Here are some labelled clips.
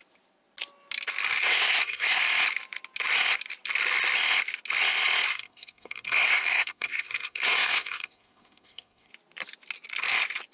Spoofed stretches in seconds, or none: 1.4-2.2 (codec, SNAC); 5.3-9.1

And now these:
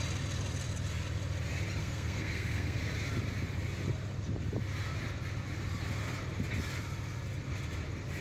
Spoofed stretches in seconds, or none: 1.8-2.8 (codec, SNAC)

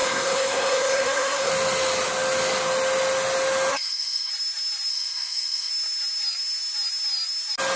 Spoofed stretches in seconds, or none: 0.0-1.5 (codec, SNAC); 3.7-4.3; 4.9-5.7